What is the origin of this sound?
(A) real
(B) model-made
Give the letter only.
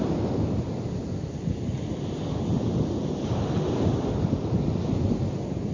A